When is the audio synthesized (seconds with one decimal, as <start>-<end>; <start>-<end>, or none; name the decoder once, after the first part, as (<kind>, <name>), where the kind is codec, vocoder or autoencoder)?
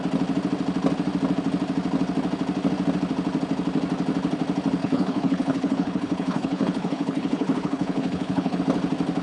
4.8-8.6 (codec, HILCodec)